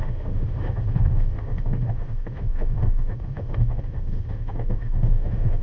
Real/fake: fake